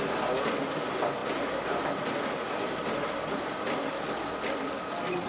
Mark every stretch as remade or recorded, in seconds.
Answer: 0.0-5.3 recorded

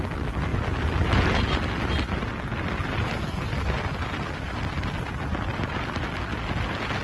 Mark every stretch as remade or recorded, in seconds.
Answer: 0.0-7.0 recorded

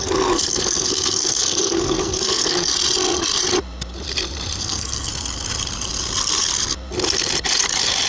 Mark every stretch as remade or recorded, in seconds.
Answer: 0.0-2.7 remade; 2.7-4.6 recorded; 4.6-5.1 remade; 5.1-8.1 recorded